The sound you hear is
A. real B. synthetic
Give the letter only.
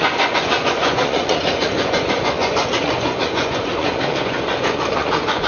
B